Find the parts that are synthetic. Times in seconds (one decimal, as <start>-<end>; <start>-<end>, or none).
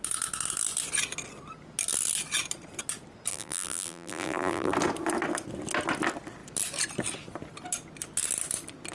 3.3-4.7